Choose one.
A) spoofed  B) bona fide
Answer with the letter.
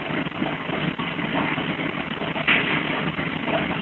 B